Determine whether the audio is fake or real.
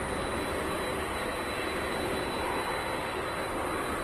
real